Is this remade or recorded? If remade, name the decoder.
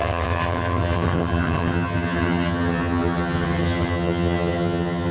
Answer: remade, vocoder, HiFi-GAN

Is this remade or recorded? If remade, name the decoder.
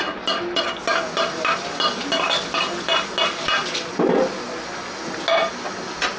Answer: recorded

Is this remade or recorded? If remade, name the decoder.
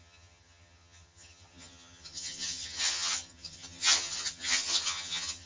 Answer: remade, vocoder, HiFi-GAN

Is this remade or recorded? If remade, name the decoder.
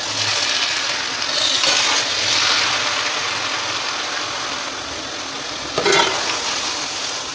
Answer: recorded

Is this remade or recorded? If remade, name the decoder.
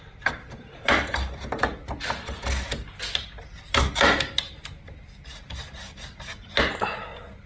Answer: recorded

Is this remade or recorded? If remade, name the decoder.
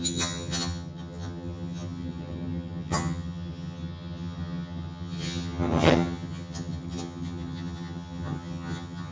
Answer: remade, vocoder, HiFi-GAN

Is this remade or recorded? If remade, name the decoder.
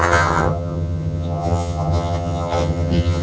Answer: remade, vocoder, HiFi-GAN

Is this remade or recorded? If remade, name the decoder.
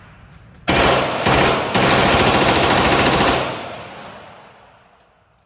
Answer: recorded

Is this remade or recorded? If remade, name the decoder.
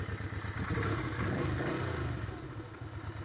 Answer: recorded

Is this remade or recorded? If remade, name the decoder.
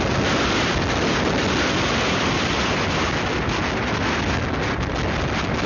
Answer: recorded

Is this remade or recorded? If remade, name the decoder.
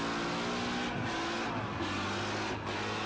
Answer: recorded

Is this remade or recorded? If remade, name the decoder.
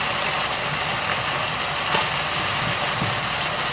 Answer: recorded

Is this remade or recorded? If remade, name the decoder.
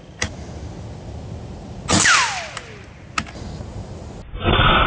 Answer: recorded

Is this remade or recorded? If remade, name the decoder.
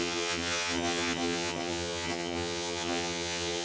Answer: remade, vocoder, HiFi-GAN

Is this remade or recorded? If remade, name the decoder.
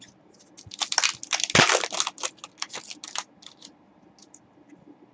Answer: recorded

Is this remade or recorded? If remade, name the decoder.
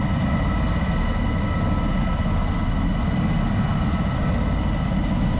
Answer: recorded